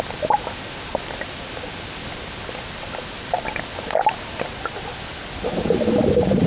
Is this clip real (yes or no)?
yes